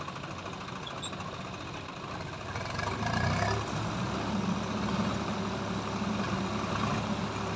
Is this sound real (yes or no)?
yes